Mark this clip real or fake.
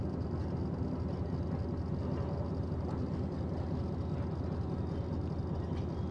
real